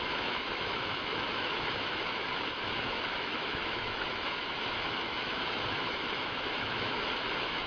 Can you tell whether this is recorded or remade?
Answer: remade